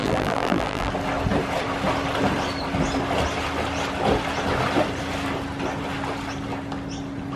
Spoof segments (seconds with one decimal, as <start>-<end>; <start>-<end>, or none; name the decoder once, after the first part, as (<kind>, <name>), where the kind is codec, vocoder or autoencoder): 0.0-0.9 (vocoder, BigVGAN v2)